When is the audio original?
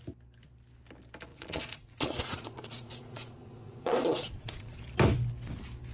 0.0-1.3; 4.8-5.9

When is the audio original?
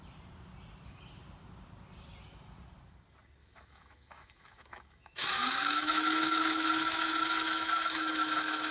0.0-3.4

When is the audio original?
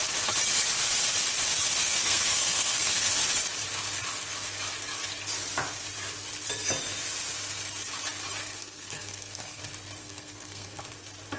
0.0-1.8; 3.1-8.4; 9.6-10.0; 10.8-11.4